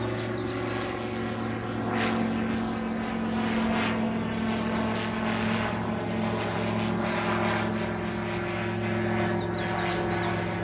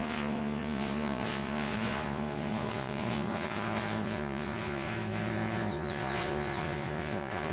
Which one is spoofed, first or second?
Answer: second